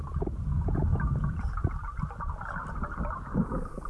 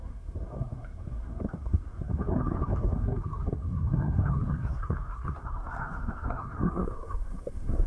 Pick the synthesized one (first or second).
second